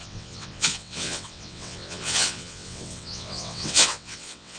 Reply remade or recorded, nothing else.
remade